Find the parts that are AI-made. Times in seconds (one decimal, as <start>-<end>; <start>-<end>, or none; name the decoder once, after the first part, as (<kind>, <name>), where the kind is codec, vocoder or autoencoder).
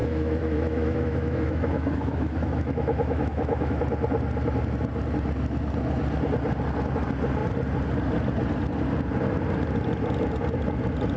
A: 0.0-3.8 (autoencoder, DAC-VAE)